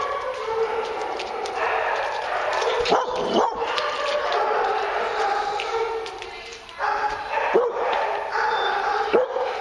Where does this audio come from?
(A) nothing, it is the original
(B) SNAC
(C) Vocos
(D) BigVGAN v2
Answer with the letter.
D